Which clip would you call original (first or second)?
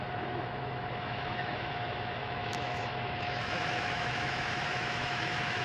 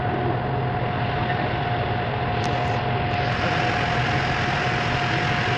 second